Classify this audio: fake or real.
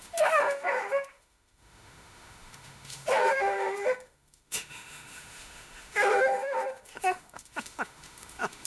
fake